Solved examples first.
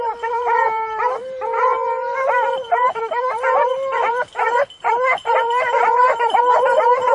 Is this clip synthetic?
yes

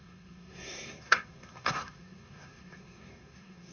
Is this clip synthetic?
yes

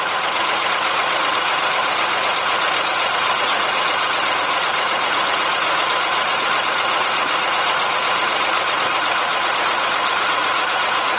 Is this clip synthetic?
yes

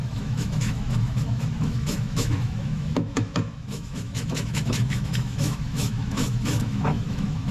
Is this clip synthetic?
yes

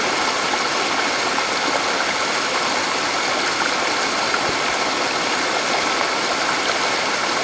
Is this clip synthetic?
no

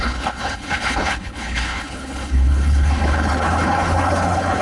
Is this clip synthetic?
yes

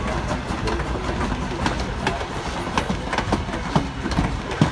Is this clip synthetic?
no